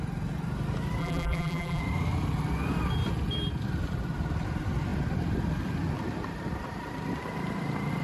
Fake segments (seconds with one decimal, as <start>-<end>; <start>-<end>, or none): 1.0-1.8